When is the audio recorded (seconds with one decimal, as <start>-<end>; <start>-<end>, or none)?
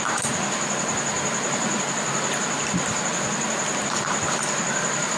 0.0-5.2